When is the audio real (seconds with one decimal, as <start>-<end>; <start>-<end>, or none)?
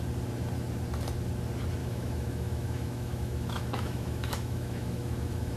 0.0-1.8